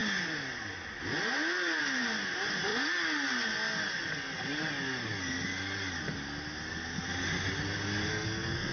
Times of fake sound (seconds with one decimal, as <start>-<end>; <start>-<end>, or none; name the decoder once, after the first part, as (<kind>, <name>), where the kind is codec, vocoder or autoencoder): 8.1-8.7 (codec, SNAC)